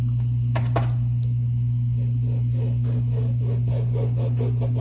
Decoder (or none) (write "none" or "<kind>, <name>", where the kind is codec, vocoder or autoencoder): none